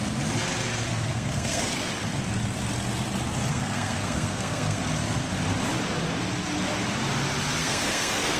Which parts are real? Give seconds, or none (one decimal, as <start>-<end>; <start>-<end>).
0.0-0.9; 1.9-3.5; 4.8-7.6